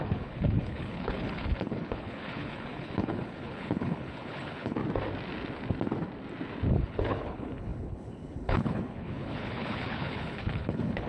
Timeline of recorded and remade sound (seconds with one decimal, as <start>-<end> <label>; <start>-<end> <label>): 0.0-4.8 remade; 4.8-6.7 recorded; 6.7-11.1 remade